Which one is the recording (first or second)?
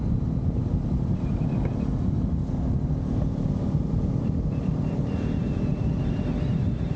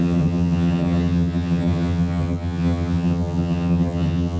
first